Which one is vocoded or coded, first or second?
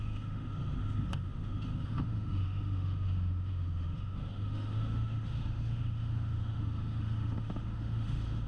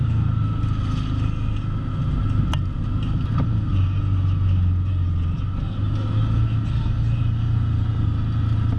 first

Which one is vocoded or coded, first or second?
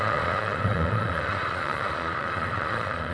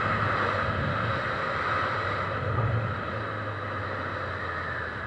first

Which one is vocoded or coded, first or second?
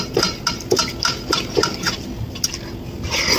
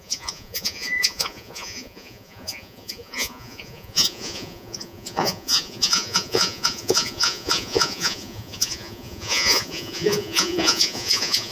second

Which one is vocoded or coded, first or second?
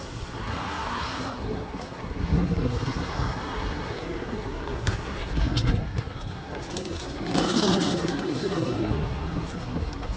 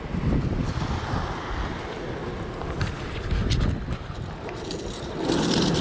first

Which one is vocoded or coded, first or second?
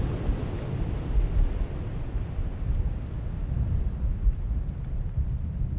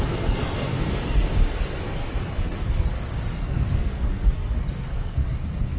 second